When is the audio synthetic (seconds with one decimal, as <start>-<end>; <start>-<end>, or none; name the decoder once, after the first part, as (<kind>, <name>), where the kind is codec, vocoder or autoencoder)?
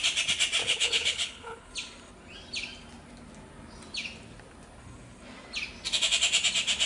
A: 0.6-1.7 (codec, HILCodec)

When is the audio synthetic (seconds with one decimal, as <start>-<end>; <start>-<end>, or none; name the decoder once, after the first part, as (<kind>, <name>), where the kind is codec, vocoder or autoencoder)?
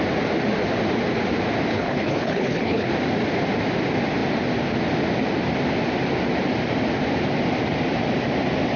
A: 1.7-2.9 (codec, HILCodec)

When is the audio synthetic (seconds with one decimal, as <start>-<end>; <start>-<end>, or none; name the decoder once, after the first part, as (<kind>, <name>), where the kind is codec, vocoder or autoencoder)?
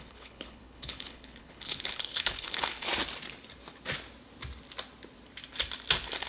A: 0.0-2.9 (codec, HILCodec)